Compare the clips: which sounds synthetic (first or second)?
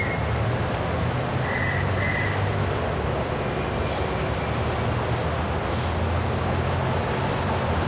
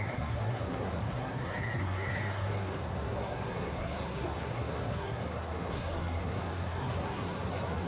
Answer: second